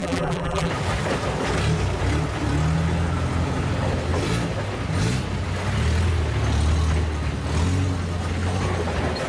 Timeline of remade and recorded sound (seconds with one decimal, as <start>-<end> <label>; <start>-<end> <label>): 0.0-0.7 remade; 0.7-9.3 recorded